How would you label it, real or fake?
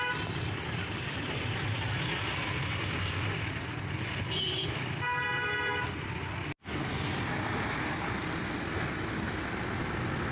real